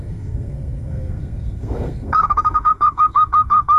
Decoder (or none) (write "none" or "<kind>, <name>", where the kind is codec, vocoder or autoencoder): codec, SNAC